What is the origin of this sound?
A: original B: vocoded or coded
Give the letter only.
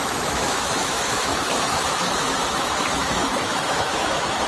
B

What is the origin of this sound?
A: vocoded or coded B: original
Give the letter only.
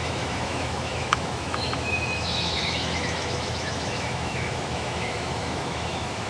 A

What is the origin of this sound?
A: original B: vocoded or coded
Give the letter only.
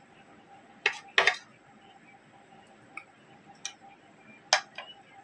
A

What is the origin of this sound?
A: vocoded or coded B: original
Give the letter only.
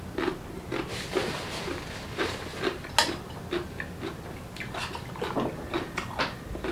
B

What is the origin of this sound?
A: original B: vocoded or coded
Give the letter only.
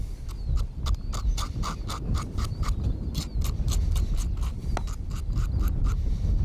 A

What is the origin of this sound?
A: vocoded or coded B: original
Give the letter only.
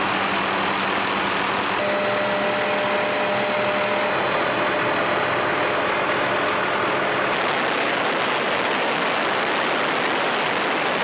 B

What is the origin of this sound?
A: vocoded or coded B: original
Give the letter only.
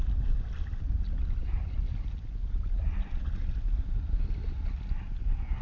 B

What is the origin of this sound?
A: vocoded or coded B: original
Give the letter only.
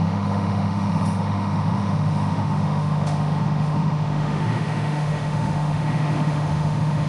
A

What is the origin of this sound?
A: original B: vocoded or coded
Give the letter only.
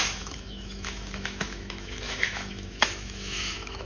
B